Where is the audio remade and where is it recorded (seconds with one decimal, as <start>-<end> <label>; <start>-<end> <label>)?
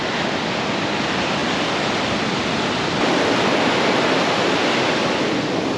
0.0-5.8 recorded